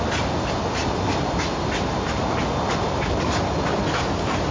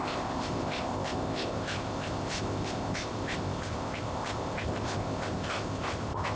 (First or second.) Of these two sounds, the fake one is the second